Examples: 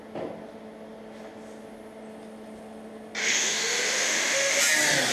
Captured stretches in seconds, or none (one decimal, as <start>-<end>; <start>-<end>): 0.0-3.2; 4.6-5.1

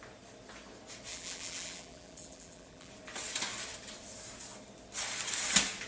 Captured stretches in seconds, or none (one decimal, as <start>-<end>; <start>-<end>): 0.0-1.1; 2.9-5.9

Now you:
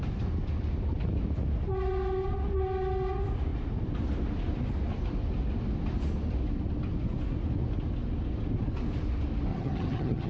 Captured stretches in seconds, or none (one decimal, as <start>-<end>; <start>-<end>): 0.0-9.5

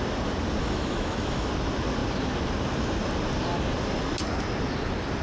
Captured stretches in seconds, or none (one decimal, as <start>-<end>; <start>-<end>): 0.0-0.6; 1.5-5.2